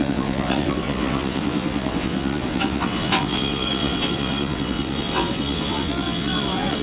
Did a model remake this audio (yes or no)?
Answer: yes